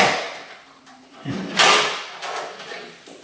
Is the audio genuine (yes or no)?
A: yes